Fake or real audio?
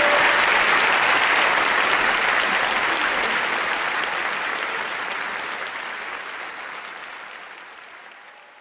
real